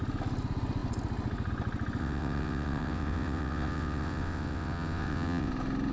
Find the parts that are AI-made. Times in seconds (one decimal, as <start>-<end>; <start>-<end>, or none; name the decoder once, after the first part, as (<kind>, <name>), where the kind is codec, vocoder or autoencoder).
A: 2.0-5.5 (vocoder, WaveNeXt)